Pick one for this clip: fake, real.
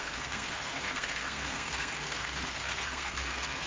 fake